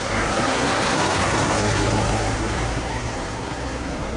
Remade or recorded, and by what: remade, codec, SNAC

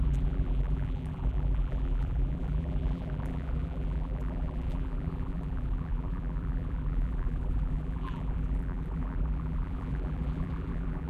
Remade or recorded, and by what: remade, vocoder, BigVGAN v2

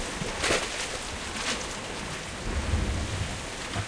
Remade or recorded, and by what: recorded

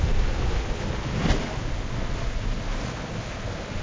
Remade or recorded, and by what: recorded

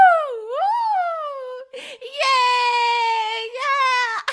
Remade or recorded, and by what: recorded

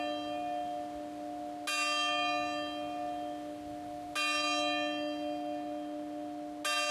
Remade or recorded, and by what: recorded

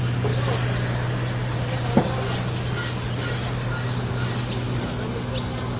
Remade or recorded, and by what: recorded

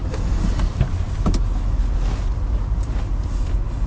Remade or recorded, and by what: recorded